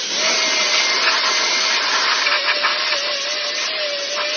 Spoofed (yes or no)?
no